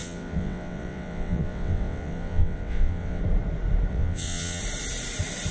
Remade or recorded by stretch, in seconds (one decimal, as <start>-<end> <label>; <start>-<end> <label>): 0.0-3.2 remade; 3.2-3.9 recorded; 3.9-4.6 remade; 4.6-5.5 recorded